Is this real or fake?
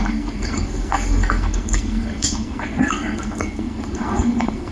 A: fake